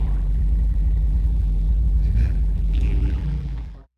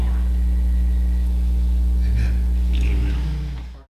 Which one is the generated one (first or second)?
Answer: first